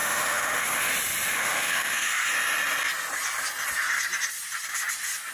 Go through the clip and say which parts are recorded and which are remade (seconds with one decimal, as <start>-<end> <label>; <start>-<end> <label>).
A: 0.0-0.9 remade; 0.9-1.3 recorded; 1.3-2.2 remade; 2.2-5.3 recorded

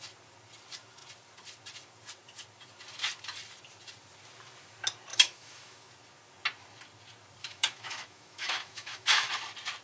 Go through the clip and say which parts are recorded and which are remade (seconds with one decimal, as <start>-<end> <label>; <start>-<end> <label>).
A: 0.0-5.1 recorded; 5.1-5.9 remade; 5.9-7.4 recorded; 7.4-9.3 remade; 9.3-9.8 recorded

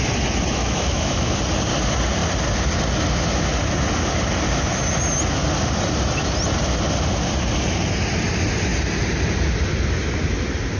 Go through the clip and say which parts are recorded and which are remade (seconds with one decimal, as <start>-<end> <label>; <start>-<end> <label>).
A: 0.0-0.6 recorded; 0.6-1.3 remade; 1.3-10.8 recorded

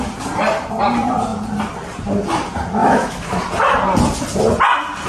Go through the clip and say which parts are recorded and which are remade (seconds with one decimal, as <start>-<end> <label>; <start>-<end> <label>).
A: 0.0-2.8 recorded; 2.8-3.4 remade; 3.4-5.1 recorded

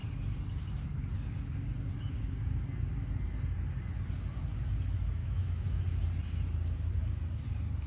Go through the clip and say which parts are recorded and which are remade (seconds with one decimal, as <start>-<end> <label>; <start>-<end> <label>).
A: 0.0-5.2 recorded; 5.2-5.8 remade; 5.8-7.9 recorded

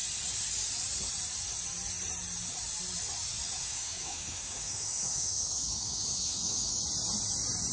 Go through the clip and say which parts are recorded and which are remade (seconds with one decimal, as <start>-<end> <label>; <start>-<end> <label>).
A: 0.0-3.6 recorded; 3.6-6.8 remade; 6.8-7.7 recorded

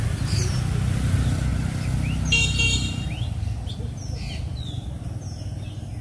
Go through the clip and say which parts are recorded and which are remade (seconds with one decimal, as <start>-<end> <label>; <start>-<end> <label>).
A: 0.0-6.0 recorded